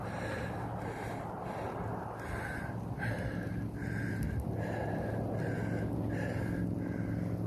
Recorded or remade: recorded